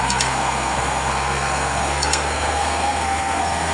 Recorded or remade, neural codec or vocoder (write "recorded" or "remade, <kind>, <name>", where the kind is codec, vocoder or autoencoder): remade, codec, SNAC